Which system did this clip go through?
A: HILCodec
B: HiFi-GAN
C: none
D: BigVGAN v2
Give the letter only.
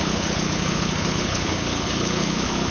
A